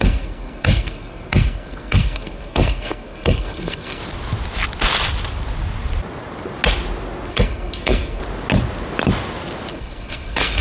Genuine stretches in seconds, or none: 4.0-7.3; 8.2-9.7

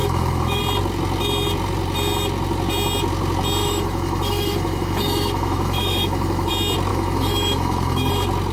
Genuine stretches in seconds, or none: 0.6-3.6; 6.5-6.9; 8.1-8.5

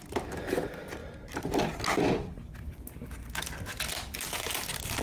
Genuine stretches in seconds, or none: 0.0-5.0

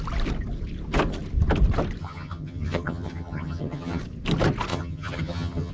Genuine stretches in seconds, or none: 0.0-2.0; 4.0-4.7

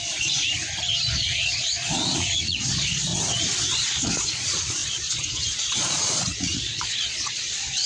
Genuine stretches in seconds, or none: 0.4-1.1; 3.1-3.8

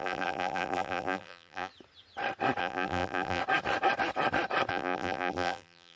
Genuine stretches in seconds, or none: 1.7-2.6; 3.4-4.7

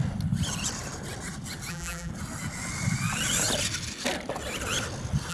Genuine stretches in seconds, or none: 0.0-1.7; 2.1-5.3